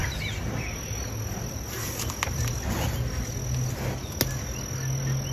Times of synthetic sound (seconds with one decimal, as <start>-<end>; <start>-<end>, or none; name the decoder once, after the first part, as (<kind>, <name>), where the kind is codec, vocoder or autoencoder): 0.0-2.6 (vocoder, BigVGAN v2)